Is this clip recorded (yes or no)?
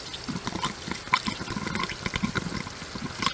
yes